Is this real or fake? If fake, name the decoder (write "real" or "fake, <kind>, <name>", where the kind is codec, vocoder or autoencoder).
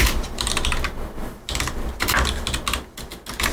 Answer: real